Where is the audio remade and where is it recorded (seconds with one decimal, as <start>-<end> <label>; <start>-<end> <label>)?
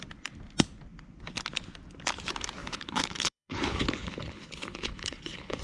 0.0-2.6 recorded; 2.6-5.6 remade